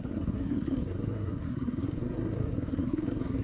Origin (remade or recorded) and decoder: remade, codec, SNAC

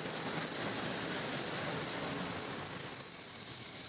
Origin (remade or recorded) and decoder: recorded